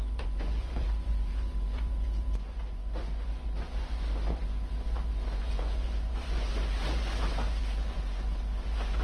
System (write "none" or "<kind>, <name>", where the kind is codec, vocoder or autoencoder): vocoder, Vocos